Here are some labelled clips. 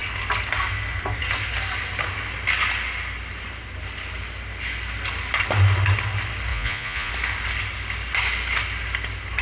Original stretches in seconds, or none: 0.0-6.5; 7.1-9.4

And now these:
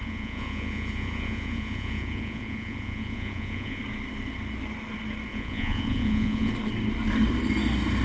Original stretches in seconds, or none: 3.8-5.3; 6.5-8.0

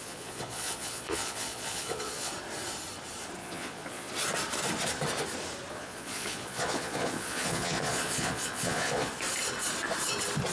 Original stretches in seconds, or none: 2.3-3.4; 4.1-5.7; 9.1-10.5

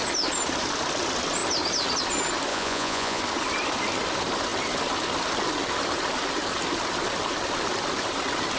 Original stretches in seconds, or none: 0.0-2.5; 3.2-8.6

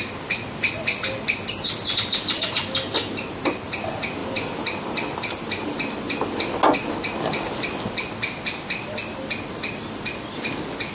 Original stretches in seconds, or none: 0.0-10.9

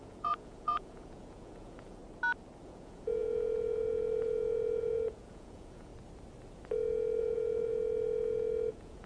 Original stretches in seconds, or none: 2.0-2.6; 5.9-7.2; 7.7-8.7

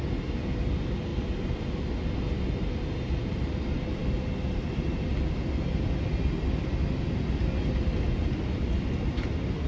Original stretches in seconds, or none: 0.0-9.7

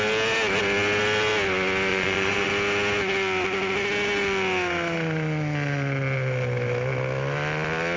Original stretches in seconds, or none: 0.0-1.9; 2.5-8.0